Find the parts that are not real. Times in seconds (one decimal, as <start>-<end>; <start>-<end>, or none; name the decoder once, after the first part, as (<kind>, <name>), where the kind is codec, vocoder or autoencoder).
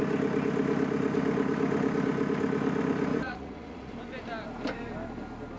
3.1-3.9 (vocoder, Vocos)